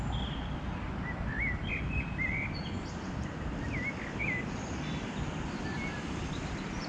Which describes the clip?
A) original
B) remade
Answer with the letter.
A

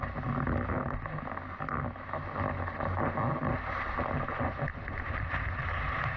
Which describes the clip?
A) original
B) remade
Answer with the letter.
A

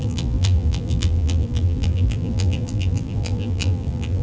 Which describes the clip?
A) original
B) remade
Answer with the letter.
B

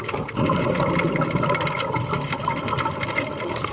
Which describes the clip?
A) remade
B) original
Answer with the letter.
B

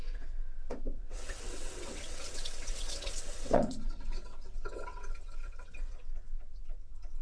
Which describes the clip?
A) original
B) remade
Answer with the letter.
B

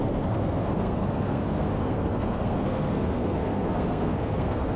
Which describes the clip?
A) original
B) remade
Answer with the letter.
B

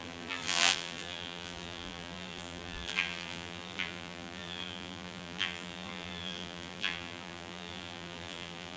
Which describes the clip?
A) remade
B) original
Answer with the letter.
A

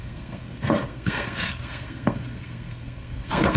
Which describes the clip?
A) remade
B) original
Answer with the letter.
A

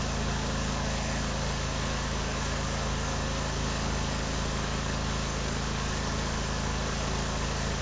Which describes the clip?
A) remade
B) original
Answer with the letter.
A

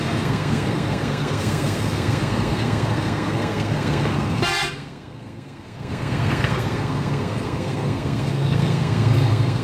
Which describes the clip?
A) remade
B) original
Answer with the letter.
A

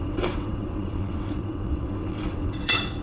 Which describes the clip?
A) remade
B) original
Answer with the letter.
A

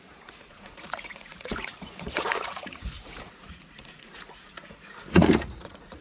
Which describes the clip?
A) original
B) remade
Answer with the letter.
B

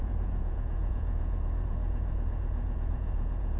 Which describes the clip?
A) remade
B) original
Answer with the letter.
A